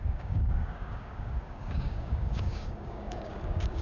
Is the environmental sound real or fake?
fake